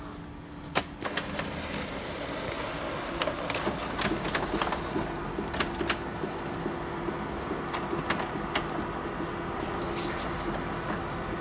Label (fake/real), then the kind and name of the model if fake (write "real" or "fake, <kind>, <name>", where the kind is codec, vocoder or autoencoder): real